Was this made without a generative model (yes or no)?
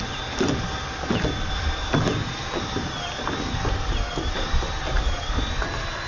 yes